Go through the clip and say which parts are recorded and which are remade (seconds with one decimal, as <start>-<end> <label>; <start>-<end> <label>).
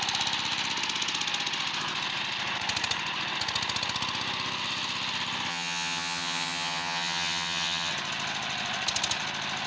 0.0-5.5 recorded; 5.5-7.9 remade; 7.9-9.7 recorded